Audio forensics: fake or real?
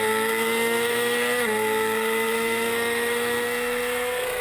fake